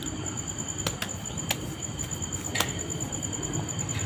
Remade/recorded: recorded